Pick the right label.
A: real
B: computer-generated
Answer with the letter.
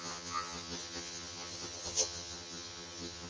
B